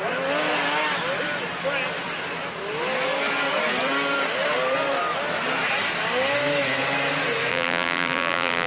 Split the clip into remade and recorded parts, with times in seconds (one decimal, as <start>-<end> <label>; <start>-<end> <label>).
0.0-7.5 recorded; 7.5-8.7 remade